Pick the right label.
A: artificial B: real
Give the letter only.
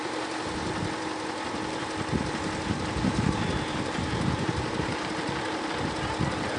A